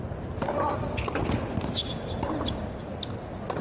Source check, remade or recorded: recorded